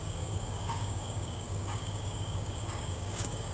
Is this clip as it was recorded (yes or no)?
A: no